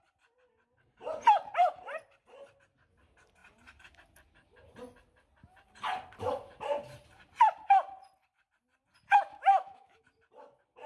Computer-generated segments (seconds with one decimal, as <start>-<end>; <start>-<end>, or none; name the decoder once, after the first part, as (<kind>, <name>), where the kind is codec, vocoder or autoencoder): 9.3-10.0 (autoencoder, DAC-VAE)